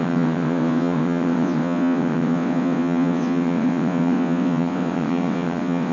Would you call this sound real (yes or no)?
no